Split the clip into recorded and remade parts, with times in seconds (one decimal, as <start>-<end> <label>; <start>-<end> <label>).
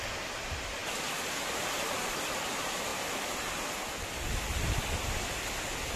0.0-2.9 recorded; 2.9-4.1 remade; 4.1-6.0 recorded